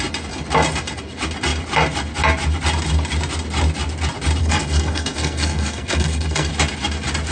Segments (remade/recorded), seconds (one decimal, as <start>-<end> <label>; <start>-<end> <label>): 0.0-4.4 recorded; 4.4-6.5 remade; 6.5-7.3 recorded